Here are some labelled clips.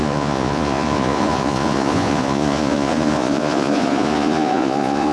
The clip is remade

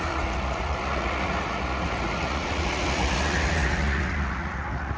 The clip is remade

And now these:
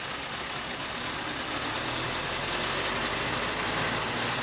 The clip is recorded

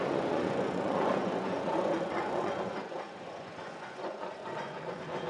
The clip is remade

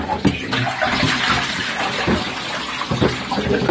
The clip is recorded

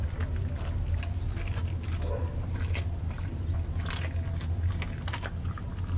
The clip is recorded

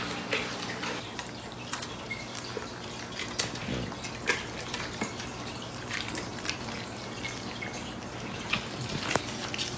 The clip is recorded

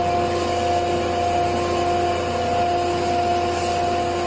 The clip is recorded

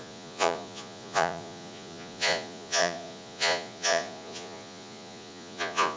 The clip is remade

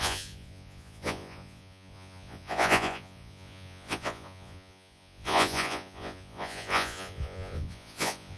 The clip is remade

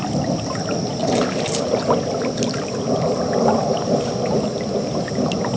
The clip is recorded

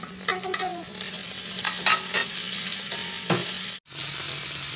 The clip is recorded